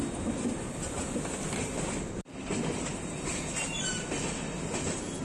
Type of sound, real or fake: real